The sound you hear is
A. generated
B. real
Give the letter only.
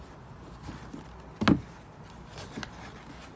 B